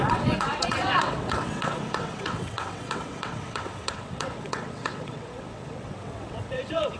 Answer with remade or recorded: remade